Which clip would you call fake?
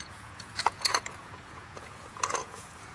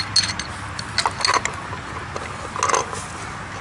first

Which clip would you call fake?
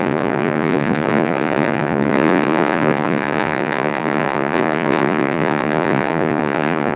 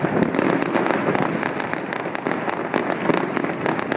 first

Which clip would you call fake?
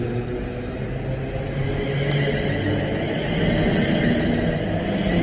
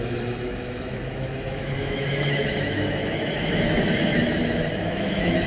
second